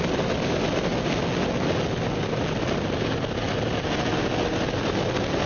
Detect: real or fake real